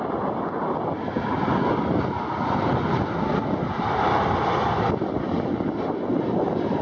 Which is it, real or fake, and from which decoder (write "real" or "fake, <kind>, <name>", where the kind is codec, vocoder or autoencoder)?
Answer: real